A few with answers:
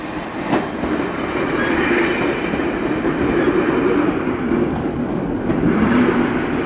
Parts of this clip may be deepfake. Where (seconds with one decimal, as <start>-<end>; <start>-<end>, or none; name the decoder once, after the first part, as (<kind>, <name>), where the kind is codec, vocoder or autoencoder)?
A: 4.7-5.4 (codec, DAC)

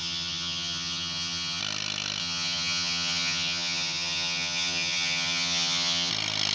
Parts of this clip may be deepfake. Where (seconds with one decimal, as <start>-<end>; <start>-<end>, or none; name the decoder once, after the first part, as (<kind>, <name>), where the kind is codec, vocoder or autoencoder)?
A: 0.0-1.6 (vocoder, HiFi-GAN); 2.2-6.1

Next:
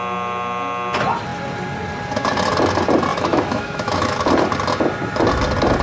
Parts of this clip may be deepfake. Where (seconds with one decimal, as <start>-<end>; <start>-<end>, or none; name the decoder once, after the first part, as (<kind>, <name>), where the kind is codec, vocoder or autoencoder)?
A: 3.1-4.3 (autoencoder, DAC-VAE)